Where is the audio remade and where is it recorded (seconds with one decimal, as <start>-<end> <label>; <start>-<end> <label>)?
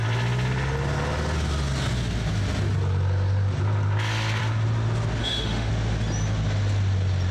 0.0-5.2 recorded; 5.2-5.7 remade; 5.7-7.3 recorded